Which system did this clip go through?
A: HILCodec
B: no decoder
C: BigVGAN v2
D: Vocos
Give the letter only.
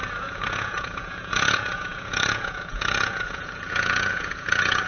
D